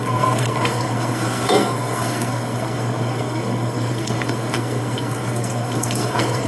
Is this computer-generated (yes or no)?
yes